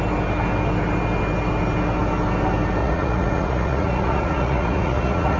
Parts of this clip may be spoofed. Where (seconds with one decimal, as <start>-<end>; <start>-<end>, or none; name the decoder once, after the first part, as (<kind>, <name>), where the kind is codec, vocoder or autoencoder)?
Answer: 2.8-5.4 (vocoder, Vocos)